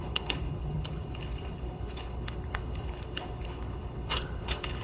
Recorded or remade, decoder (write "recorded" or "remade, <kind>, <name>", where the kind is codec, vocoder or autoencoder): remade, codec, HILCodec